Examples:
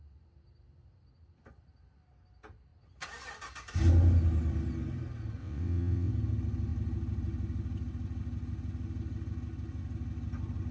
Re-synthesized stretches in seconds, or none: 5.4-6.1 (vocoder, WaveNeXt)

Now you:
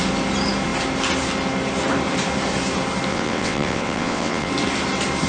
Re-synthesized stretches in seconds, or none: 3.1-4.5 (vocoder, WaveNeXt)

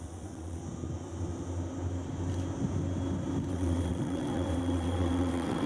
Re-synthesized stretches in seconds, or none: 0.0-0.6 (vocoder, WaveNeXt); 3.5-5.7